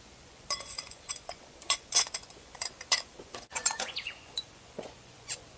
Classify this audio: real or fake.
fake